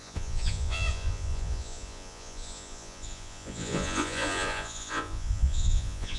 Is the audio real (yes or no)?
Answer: no